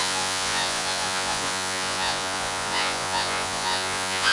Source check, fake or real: fake